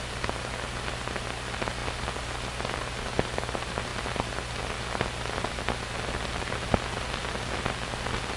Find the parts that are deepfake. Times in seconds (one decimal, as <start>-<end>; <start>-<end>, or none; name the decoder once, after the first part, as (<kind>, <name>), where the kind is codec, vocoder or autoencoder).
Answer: none